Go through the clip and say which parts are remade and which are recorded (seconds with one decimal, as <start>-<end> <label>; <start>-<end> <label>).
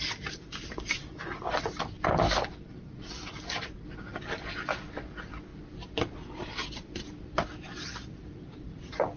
0.0-9.2 recorded